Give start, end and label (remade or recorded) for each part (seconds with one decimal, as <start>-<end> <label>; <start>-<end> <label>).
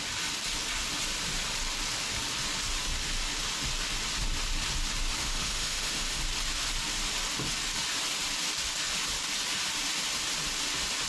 0.0-5.2 recorded; 5.2-6.2 remade; 6.2-11.1 recorded